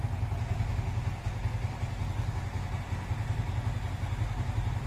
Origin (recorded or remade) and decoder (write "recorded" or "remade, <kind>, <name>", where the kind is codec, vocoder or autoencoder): recorded